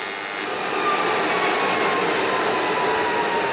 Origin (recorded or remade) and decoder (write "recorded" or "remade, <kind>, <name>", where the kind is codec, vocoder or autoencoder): recorded